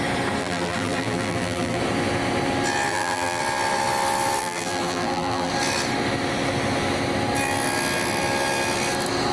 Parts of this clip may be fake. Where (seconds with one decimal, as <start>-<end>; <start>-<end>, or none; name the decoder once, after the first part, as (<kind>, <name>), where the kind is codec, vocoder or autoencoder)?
0.4-1.8 (vocoder, BigVGAN v2); 2.9-3.4; 4.4-5.5